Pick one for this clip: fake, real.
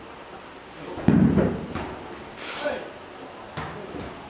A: real